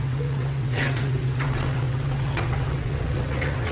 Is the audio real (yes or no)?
no